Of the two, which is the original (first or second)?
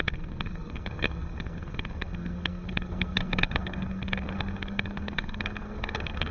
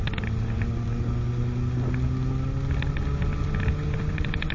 second